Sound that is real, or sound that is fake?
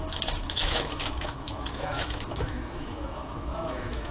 fake